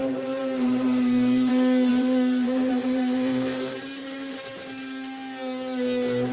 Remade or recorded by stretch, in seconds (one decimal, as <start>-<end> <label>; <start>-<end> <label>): 0.0-1.5 remade; 1.5-1.9 recorded; 1.9-4.5 remade; 4.5-6.3 recorded